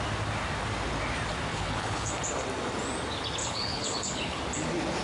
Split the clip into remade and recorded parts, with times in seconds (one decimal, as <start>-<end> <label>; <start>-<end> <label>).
0.0-1.5 recorded; 1.5-2.1 remade; 2.1-3.4 recorded; 3.4-4.4 remade; 4.4-5.0 recorded